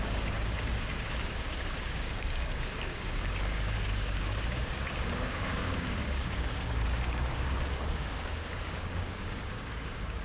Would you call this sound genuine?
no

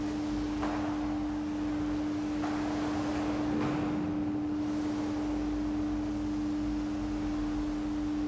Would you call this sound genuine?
yes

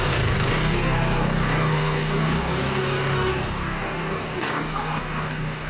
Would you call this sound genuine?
no